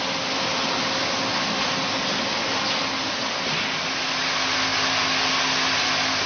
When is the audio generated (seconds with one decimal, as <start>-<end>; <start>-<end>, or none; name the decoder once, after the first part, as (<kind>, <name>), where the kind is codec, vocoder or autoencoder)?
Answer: none